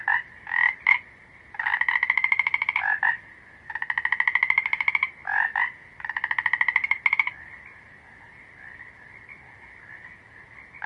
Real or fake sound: real